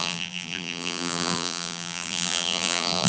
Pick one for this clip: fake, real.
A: fake